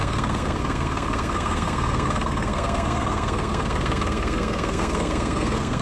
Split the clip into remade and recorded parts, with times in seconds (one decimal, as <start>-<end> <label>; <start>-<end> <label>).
0.0-5.8 remade